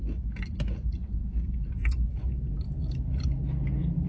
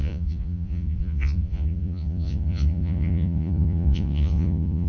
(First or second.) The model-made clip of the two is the second